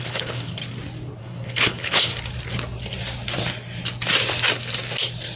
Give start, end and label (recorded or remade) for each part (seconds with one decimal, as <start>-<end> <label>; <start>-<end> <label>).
0.0-0.6 remade; 0.6-1.2 recorded; 1.2-2.1 remade; 2.1-5.4 recorded